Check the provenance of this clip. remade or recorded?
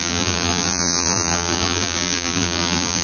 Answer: remade